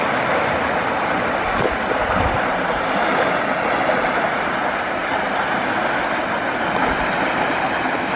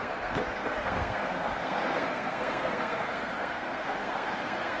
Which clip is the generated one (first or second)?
second